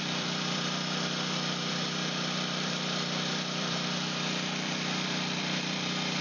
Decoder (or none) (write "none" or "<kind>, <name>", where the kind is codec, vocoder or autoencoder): vocoder, BigVGAN v2